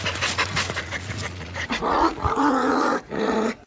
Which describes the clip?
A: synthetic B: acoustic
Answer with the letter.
A